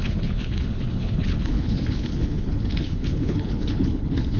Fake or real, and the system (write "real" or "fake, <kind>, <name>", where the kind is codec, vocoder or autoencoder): fake, codec, HILCodec